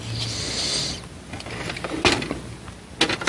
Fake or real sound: real